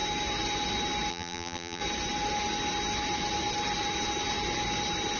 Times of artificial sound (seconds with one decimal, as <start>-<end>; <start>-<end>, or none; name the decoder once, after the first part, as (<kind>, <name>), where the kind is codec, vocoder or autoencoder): 1.1-1.8 (vocoder, BigVGAN v2)